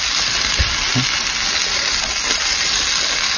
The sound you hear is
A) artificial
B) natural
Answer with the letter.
B